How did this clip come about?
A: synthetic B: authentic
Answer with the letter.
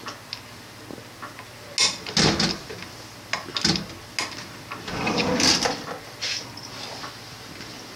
B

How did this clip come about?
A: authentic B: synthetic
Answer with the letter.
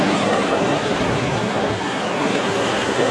B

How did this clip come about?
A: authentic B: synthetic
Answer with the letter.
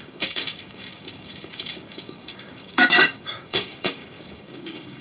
B